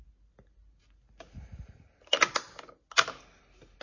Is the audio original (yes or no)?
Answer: yes